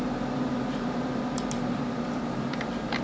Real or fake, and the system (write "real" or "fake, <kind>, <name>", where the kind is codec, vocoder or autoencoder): fake, vocoder, BigVGAN v2